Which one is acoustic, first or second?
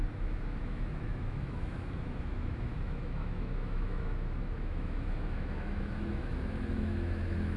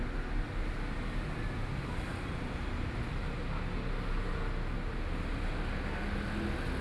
second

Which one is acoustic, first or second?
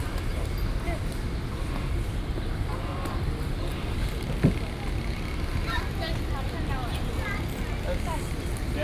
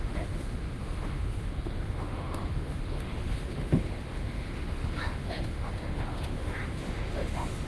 first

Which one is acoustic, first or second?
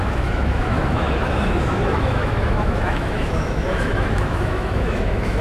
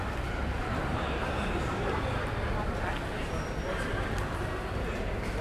second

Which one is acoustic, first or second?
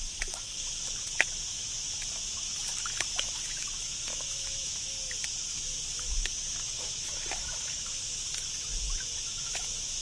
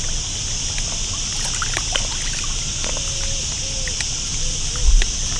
second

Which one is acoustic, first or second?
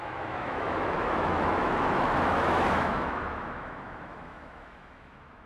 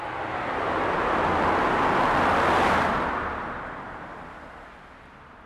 second